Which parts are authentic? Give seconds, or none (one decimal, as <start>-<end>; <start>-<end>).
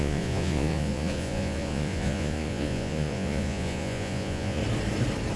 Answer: 4.6-5.4